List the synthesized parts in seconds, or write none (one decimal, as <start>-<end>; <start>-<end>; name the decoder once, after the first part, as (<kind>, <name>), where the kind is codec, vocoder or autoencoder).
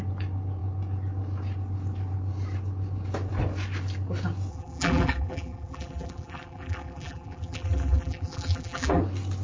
4.5-9.0 (vocoder, BigVGAN v2)